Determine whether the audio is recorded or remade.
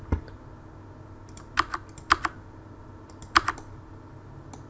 recorded